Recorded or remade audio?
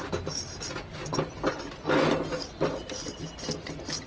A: recorded